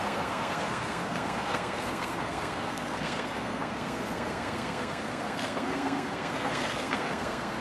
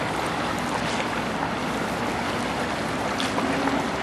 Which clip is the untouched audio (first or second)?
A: second